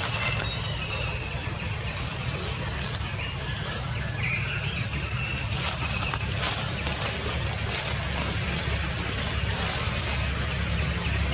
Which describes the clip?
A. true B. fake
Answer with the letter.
A